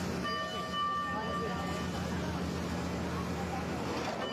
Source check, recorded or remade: recorded